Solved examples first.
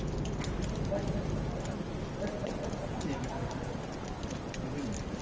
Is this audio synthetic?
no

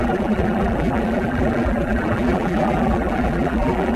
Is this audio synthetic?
yes